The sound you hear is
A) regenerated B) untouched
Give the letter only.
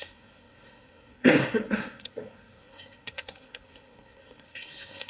A